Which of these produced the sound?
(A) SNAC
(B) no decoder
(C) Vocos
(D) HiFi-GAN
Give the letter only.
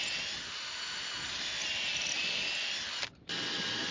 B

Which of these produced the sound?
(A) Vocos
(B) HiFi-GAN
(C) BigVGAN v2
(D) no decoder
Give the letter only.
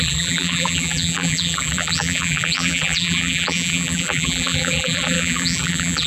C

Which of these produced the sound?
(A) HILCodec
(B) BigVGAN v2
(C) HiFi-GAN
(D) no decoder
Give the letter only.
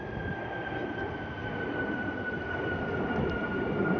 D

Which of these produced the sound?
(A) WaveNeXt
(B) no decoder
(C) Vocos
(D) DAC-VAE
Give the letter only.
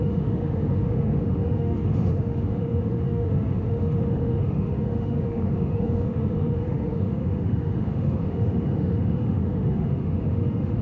D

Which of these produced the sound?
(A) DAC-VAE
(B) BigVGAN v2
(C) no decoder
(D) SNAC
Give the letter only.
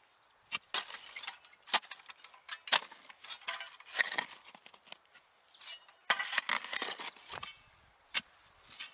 C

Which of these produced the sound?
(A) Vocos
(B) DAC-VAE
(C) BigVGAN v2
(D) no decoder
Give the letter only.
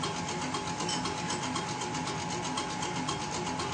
D